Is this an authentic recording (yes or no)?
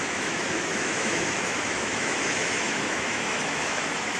no